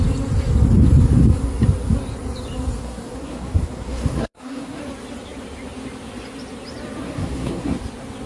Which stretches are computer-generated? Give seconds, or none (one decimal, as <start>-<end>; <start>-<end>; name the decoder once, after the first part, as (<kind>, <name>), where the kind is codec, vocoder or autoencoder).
2.8-4.8 (codec, SNAC); 7.0-7.8